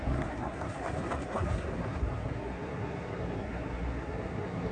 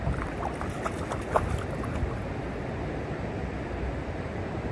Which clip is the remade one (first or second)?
first